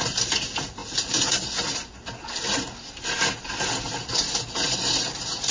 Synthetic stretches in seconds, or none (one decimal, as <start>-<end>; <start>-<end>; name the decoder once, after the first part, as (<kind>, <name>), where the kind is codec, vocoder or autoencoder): none

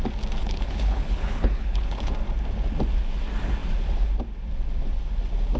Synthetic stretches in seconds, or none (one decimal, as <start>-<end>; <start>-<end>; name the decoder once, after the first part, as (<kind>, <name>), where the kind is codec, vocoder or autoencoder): 0.4-2.1 (codec, HILCodec)

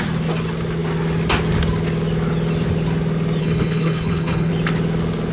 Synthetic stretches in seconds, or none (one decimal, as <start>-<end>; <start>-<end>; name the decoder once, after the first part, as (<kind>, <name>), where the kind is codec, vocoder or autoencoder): 3.4-4.5 (codec, HILCodec)

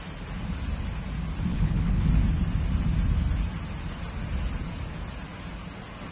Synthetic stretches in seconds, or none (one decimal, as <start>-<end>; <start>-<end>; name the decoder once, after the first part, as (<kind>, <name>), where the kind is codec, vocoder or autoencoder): 1.5-2.1 (codec, HILCodec)

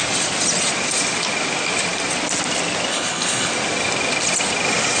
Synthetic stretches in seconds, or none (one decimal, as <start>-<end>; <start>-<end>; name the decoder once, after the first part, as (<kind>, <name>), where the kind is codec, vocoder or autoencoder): 2.9-3.5 (codec, HILCodec)